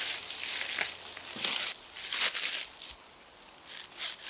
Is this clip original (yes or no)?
yes